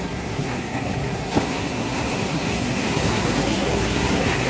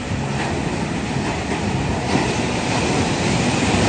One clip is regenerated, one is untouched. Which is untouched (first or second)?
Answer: second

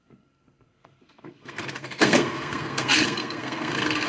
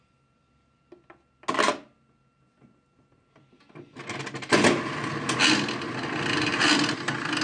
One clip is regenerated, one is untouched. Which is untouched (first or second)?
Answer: second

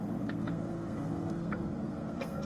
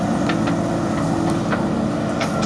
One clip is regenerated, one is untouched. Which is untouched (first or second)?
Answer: second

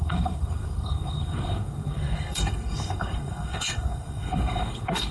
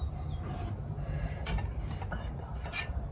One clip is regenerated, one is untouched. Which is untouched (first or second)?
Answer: second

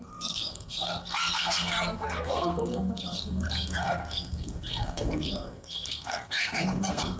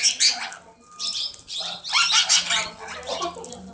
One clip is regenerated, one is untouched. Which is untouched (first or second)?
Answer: second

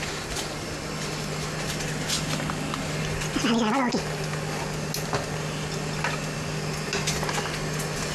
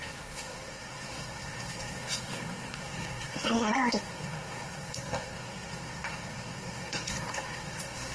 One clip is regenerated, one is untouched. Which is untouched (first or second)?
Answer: first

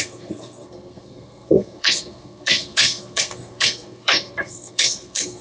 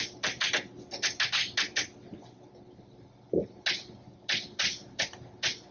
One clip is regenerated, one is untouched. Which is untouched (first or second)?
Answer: second